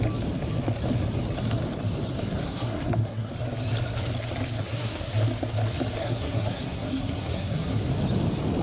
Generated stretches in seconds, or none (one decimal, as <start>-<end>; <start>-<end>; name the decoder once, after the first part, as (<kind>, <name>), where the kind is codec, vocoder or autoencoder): 2.4-3.3 (codec, SNAC); 4.6-5.1; 6.0-7.9